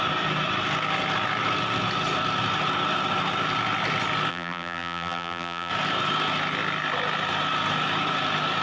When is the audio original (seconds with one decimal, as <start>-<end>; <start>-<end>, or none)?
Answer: 0.0-4.3; 5.7-8.6